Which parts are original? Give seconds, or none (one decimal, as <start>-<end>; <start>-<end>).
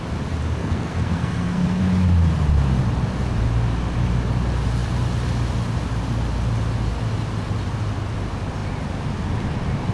0.0-0.6; 1.8-9.9